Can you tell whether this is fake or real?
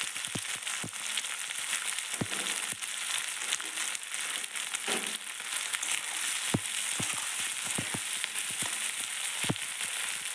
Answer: real